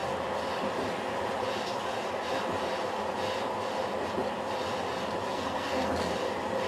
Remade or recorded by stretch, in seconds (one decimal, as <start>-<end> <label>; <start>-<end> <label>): 0.0-5.3 recorded; 5.3-5.9 remade; 5.9-6.7 recorded